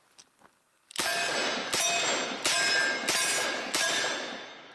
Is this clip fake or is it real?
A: real